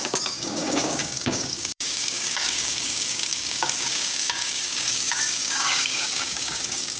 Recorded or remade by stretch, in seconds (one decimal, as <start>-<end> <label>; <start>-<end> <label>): 0.0-7.0 remade